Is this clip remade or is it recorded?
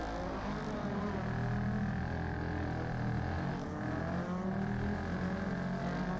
recorded